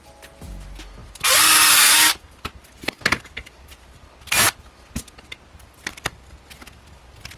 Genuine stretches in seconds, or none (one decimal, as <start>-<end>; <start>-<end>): 0.0-7.4